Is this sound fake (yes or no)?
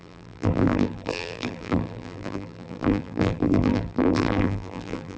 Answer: yes